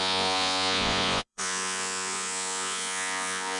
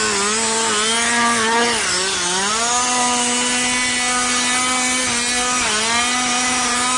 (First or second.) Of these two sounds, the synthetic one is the first